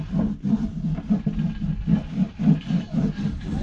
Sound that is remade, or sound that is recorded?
recorded